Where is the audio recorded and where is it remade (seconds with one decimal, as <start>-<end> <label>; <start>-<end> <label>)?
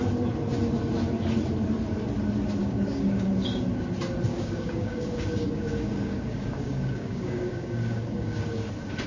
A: 0.0-2.6 recorded; 2.6-3.3 remade; 3.3-4.3 recorded; 4.3-8.7 remade; 8.7-9.1 recorded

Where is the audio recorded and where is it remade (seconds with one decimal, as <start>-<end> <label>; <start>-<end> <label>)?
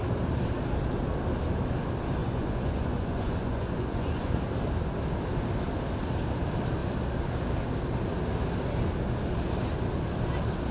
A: 0.0-2.2 recorded; 2.2-4.3 remade; 4.3-10.7 recorded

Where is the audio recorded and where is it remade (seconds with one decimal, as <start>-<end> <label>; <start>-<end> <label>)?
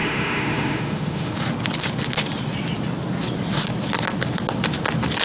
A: 0.0-1.3 remade; 1.3-5.2 recorded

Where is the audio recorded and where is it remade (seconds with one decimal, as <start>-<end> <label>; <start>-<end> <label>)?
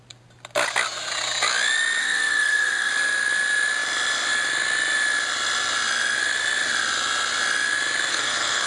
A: 0.0-2.0 recorded; 2.0-2.9 remade; 2.9-8.1 recorded; 8.1-8.7 remade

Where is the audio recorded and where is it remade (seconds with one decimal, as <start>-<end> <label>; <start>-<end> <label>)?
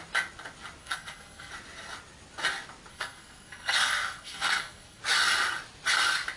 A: 0.0-0.8 recorded; 0.8-1.5 remade; 1.5-2.9 recorded; 2.9-5.0 remade; 5.0-6.4 recorded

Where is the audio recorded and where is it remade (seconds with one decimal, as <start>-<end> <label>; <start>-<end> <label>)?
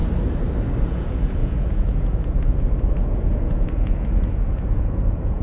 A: 0.0-0.8 recorded; 0.8-5.4 remade